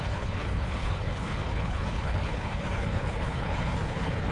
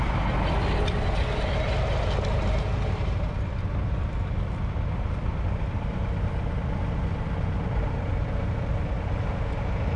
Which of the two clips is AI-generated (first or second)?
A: first